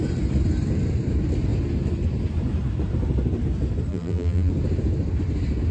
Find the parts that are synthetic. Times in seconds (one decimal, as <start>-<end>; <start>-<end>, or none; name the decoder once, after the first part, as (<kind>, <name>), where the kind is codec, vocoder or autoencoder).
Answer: 3.9-4.5 (vocoder, BigVGAN v2)